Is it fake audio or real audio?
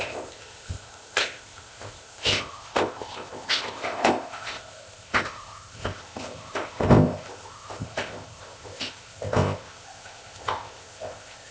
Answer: fake